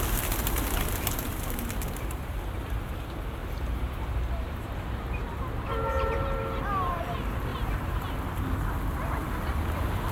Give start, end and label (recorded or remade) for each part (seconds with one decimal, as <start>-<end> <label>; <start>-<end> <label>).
0.0-3.4 recorded; 3.4-7.0 remade; 7.0-7.5 recorded; 7.5-8.2 remade; 8.2-10.1 recorded